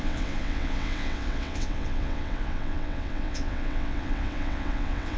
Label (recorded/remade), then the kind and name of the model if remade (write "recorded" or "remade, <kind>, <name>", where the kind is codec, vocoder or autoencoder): remade, vocoder, WaveNeXt